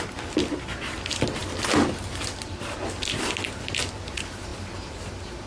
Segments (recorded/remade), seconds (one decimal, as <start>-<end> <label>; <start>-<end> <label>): 0.0-5.5 recorded